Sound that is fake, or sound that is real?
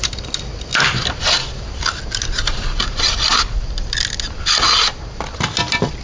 real